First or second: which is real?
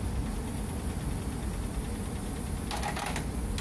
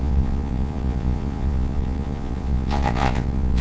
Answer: first